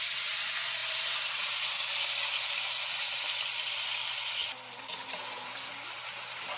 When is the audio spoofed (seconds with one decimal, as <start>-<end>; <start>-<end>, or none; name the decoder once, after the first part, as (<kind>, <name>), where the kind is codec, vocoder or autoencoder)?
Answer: 0.8-1.9 (vocoder, BigVGAN v2)